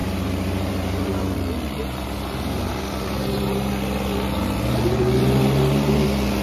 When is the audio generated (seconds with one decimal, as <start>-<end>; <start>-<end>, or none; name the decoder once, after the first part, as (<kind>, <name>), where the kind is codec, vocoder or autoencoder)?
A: 0.0-1.2 (vocoder, BigVGAN v2); 1.8-3.7